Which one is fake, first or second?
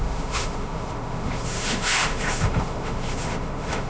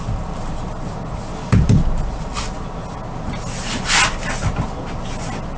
first